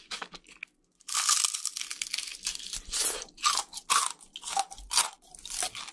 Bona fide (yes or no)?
yes